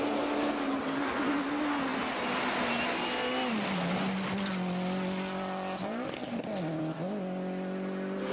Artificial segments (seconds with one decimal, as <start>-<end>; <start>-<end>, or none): none